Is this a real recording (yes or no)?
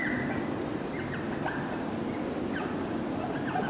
yes